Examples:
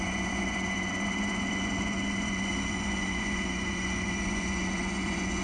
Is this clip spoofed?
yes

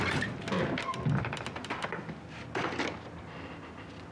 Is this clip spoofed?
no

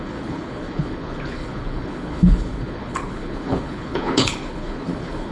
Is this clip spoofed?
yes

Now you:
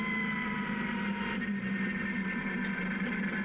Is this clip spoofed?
no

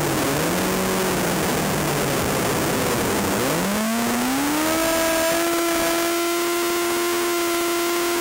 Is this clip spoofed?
no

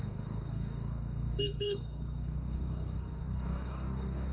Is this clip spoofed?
yes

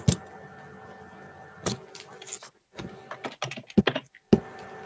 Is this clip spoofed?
no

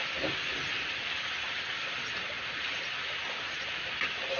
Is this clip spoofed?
no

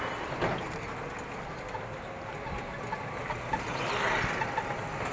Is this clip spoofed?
no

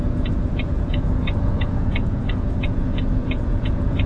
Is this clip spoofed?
yes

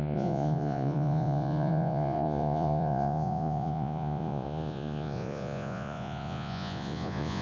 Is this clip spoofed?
yes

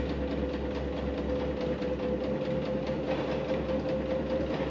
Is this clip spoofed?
no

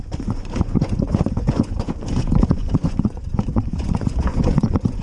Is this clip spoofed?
yes